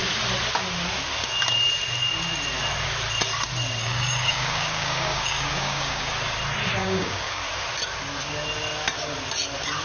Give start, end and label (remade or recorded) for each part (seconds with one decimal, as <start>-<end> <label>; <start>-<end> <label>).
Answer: 0.0-3.8 recorded; 3.8-6.0 remade; 6.0-6.8 recorded; 6.8-7.4 remade; 7.4-9.8 recorded